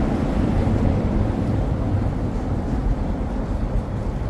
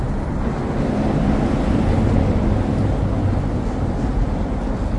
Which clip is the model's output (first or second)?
first